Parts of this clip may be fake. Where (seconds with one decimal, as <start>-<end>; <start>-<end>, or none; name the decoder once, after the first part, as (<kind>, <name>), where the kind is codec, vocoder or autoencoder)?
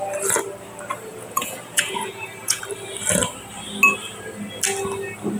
1.1-2.6 (vocoder, Vocos)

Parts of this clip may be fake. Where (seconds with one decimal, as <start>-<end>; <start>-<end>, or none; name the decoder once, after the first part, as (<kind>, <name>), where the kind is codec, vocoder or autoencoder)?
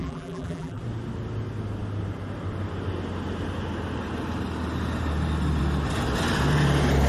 0.0-0.8 (vocoder, BigVGAN v2)